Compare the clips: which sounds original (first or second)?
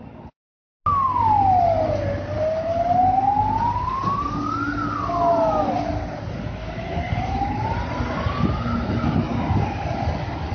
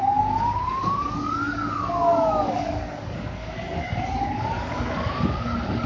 first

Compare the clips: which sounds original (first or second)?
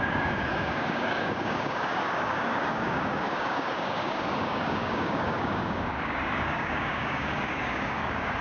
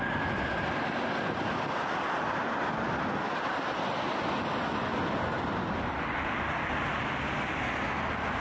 second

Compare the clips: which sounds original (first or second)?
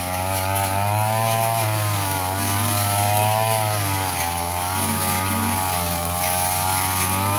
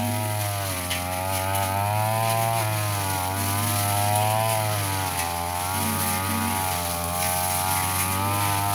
second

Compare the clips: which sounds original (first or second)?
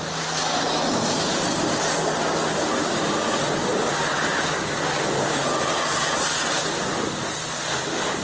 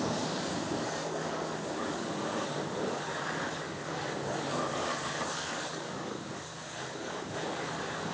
first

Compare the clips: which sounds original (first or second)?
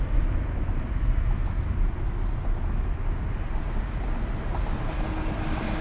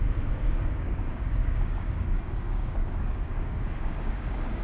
first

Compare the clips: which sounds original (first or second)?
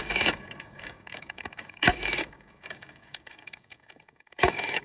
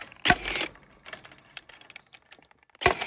second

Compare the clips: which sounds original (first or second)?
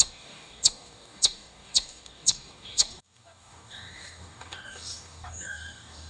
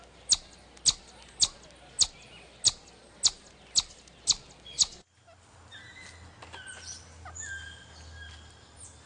second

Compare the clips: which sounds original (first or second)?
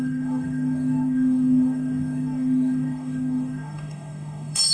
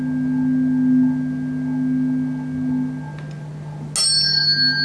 second